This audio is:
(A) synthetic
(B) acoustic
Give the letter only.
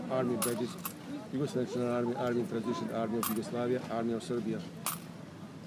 B